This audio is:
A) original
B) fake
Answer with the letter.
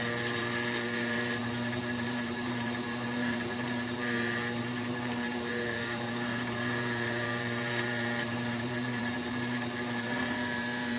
B